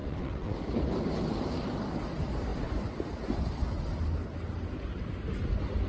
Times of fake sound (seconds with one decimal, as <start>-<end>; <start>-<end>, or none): 0.0-0.6